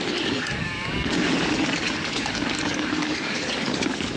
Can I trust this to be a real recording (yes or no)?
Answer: no